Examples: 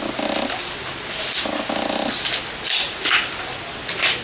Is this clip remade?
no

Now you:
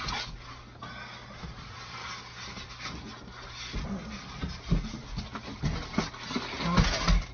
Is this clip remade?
no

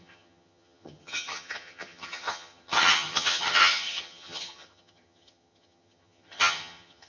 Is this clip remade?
yes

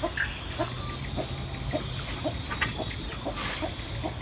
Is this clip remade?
no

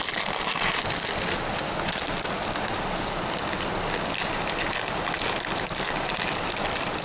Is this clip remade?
no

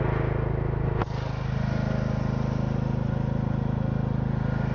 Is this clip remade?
no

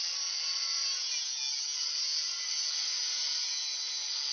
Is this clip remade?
no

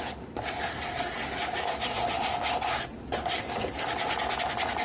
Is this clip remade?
no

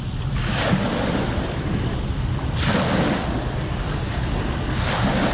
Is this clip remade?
no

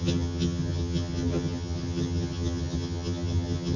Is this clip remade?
yes